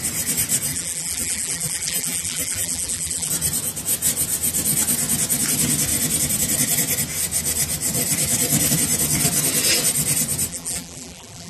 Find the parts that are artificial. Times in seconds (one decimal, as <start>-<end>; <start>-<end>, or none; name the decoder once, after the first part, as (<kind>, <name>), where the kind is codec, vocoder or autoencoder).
0.7-3.3 (vocoder, BigVGAN v2); 10.5-11.5